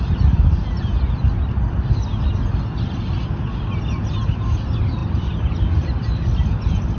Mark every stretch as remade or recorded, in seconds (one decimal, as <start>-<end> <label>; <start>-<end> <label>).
0.0-5.0 recorded; 5.0-7.0 remade